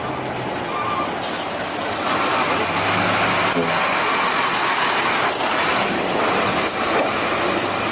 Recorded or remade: recorded